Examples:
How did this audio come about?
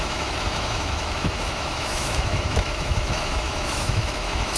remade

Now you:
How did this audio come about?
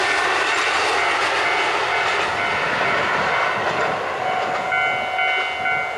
recorded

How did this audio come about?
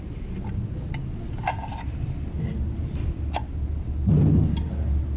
recorded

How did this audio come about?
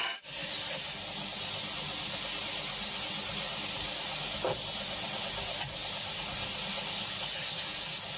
recorded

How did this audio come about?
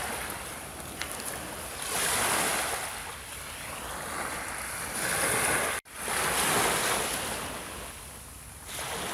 recorded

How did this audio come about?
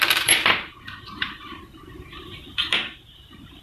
remade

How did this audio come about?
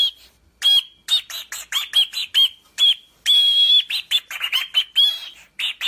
recorded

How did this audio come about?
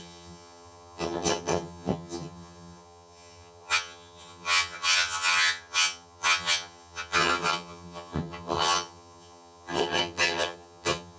remade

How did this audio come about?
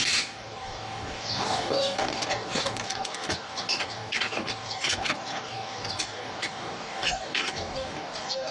remade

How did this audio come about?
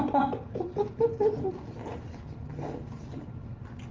recorded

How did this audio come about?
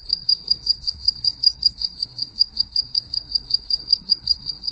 remade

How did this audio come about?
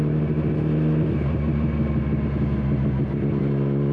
recorded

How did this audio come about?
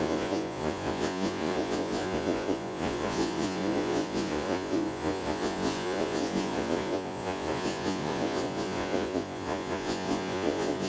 remade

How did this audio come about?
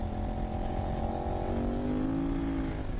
recorded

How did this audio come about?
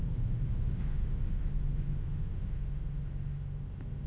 remade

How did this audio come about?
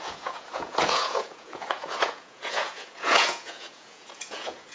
remade